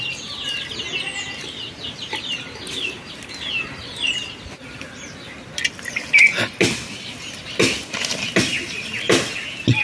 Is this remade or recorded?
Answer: recorded